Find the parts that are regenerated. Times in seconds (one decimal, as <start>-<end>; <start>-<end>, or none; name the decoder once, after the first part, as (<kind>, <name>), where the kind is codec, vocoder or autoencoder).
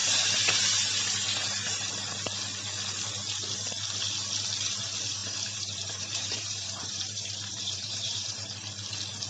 5.2-8.5 (vocoder, BigVGAN v2)